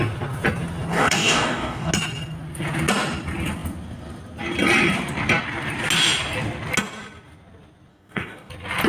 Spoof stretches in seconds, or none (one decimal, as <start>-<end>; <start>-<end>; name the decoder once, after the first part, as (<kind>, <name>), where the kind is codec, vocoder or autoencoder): 0.9-1.9 (codec, DAC); 7.9-8.5